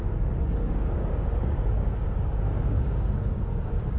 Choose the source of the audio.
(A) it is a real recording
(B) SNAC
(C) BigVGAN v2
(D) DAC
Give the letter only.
D